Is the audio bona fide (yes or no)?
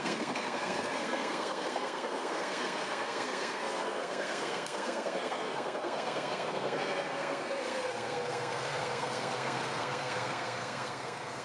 no